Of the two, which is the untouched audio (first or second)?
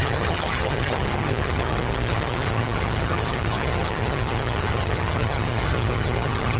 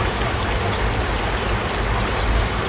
second